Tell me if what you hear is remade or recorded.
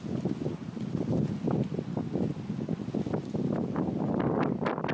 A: recorded